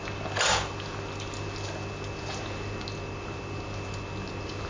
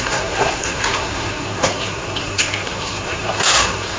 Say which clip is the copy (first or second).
second